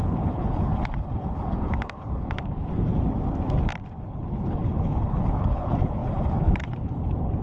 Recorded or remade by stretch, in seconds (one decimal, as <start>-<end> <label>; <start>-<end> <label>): 0.0-2.9 remade; 2.9-4.0 recorded; 4.0-7.4 remade